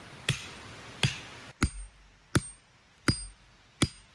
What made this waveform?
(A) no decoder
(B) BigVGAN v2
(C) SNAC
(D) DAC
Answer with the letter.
A